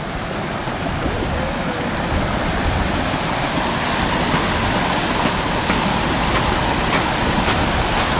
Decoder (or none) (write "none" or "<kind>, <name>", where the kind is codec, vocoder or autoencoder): none